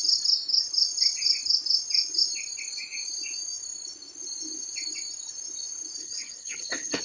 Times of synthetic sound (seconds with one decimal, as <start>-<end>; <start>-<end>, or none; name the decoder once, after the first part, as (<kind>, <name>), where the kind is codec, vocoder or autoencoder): 6.0-7.0 (codec, HILCodec)

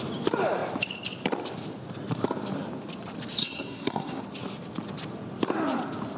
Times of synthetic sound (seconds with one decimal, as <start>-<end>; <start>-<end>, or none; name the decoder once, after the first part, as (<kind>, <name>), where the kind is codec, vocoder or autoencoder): 3.4-4.2 (codec, SNAC)